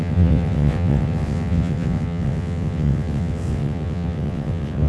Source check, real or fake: fake